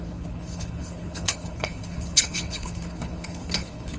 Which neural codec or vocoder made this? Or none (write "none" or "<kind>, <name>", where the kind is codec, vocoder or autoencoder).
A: codec, HILCodec